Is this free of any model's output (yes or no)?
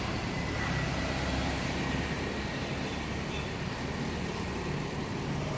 no